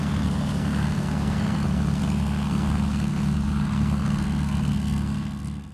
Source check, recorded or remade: remade